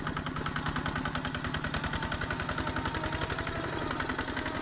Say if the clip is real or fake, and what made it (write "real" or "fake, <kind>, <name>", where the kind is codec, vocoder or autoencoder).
real